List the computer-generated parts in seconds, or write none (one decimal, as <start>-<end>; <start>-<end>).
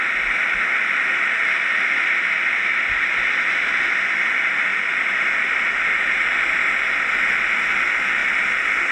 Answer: 2.7-3.7